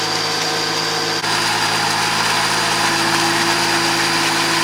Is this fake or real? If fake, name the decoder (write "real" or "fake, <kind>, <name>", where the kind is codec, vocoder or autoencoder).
real